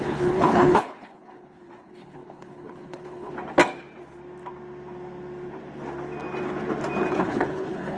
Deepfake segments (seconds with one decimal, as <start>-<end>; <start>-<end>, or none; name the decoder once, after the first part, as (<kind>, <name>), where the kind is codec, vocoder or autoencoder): 0.0-3.3 (codec, HILCodec); 7.1-8.0